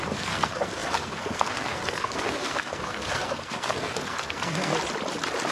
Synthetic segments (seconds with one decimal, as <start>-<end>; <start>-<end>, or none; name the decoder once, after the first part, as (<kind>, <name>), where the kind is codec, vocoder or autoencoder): 0.0-4.7 (codec, SNAC)